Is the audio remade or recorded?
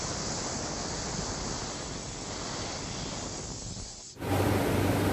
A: recorded